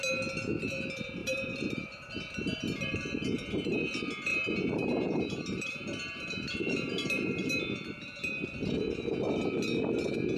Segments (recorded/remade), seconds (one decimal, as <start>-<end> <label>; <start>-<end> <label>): 0.0-1.2 recorded; 1.2-2.1 remade; 2.1-4.3 recorded; 4.3-7.6 remade; 7.6-10.4 recorded